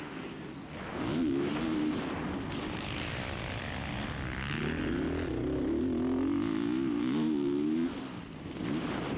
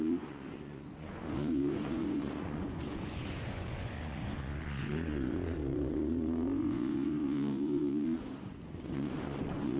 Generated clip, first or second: second